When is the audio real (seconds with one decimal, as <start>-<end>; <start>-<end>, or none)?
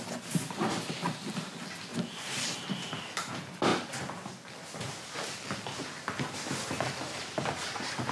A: 0.0-1.9; 3.3-8.1